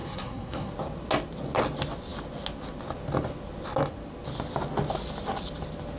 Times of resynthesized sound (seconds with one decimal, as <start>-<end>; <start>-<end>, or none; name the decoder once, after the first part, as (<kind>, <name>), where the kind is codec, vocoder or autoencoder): 0.0-0.7 (codec, SNAC)

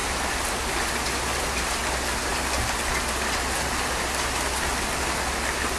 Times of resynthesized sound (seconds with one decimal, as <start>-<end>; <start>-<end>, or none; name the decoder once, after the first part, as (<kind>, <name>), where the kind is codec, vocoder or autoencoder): none

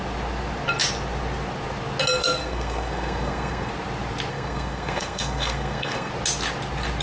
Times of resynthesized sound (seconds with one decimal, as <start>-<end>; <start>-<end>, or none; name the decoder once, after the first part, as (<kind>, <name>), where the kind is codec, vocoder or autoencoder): 2.2-3.7 (codec, SNAC); 4.3-6.1

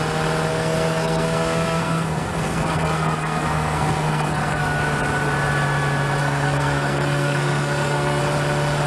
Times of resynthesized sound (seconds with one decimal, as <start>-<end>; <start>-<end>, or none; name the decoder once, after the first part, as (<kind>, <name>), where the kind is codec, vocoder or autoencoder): 0.5-4.8 (codec, SNAC); 6.2-8.2

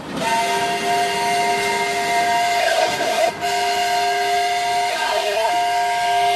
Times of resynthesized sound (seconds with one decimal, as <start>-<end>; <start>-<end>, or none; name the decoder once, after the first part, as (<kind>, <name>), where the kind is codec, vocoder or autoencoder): 2.6-3.3 (codec, SNAC); 4.9-5.5

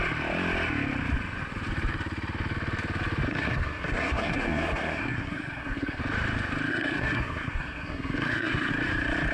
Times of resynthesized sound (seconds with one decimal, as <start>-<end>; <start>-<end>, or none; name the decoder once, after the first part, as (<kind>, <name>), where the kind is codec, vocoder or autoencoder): 3.3-6.0 (codec, SNAC); 6.7-8.7